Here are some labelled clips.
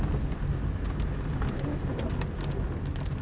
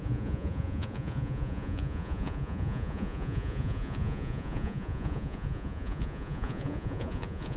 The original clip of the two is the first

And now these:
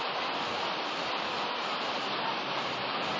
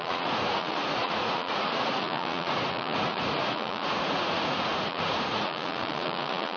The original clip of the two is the first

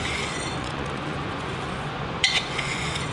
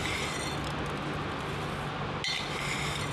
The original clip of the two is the second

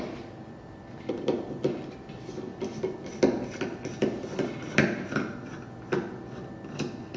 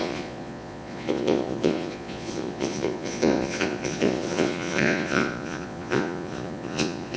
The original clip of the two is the first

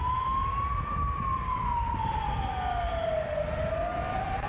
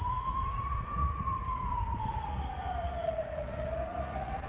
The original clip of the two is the first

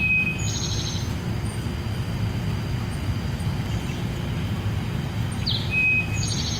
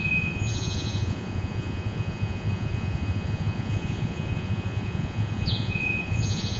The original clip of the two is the first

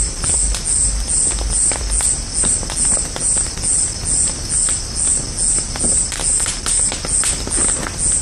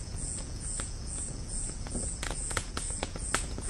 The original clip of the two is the first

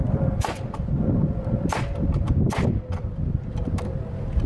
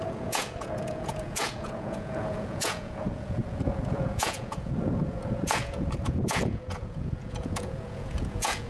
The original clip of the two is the first